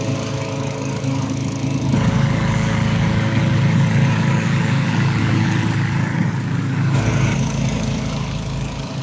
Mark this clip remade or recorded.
remade